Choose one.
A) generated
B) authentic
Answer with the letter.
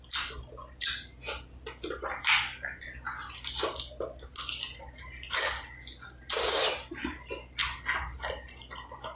B